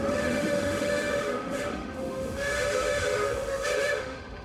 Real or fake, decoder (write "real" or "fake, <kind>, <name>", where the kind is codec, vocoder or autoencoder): fake, autoencoder, DAC-VAE